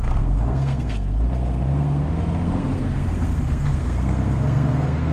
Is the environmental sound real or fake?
fake